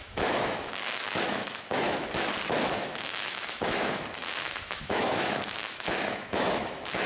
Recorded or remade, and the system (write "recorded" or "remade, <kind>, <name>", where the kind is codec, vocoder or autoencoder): remade, autoencoder, DAC-VAE